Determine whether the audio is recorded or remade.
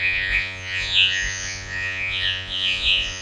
remade